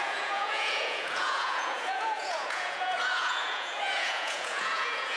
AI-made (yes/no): yes